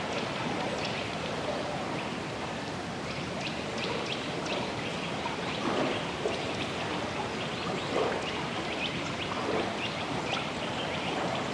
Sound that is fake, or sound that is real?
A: real